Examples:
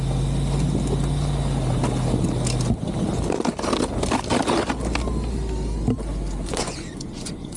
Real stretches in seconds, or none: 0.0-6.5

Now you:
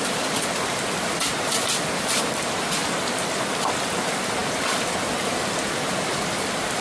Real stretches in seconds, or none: 0.0-6.8

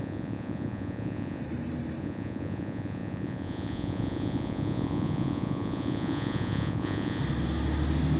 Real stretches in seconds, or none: 1.4-2.0; 7.2-8.2

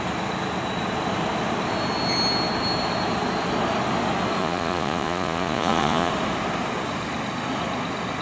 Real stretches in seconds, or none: 0.0-4.4; 6.1-8.2

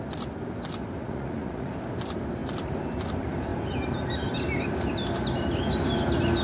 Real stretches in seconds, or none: 0.0-1.0; 1.7-6.4

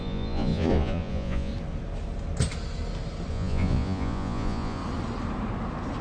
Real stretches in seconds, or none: 1.5-3.3; 4.8-6.0